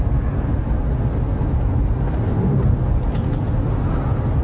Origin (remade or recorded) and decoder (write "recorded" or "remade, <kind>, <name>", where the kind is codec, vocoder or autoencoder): recorded